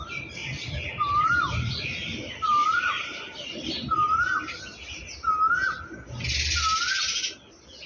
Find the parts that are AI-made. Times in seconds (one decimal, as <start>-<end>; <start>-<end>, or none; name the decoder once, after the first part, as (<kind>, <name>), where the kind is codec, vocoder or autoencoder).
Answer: 0.0-0.4 (vocoder, BigVGAN v2); 1.1-4.7; 6.8-7.9